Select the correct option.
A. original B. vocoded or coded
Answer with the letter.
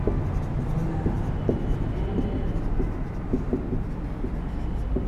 A